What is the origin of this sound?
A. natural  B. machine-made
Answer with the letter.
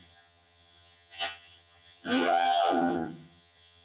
B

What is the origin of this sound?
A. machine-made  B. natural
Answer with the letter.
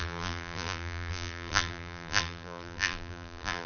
A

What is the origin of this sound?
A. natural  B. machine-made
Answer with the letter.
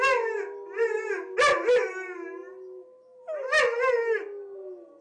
A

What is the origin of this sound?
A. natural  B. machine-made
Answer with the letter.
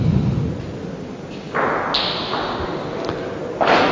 A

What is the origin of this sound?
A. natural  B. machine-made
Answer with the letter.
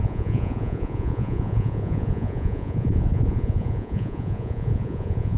B